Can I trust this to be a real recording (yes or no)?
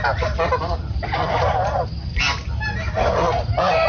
yes